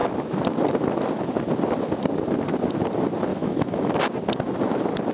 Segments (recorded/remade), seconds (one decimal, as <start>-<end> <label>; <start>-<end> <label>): 0.0-3.3 recorded; 3.3-3.9 remade; 3.9-5.1 recorded

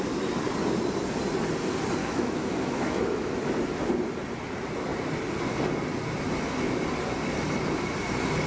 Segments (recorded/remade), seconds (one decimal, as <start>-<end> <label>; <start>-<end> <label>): 0.0-2.0 recorded; 2.0-3.5 remade; 3.5-8.5 recorded

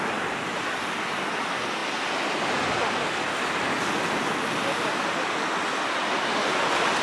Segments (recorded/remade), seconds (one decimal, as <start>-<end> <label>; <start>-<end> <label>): 0.0-7.0 recorded

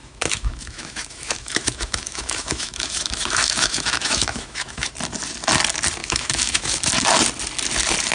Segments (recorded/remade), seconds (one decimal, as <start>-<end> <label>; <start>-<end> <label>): 0.0-4.9 remade; 4.9-6.0 recorded; 6.0-6.8 remade; 6.8-8.1 recorded

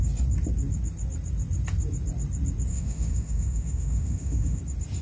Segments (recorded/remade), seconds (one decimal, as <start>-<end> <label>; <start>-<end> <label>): 0.0-2.7 recorded; 2.7-4.6 remade; 4.6-5.0 recorded

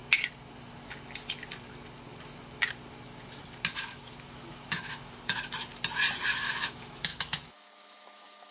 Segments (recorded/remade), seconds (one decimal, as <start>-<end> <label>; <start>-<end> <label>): 0.0-3.7 recorded; 3.7-5.7 remade; 5.7-6.3 recorded; 6.3-8.5 remade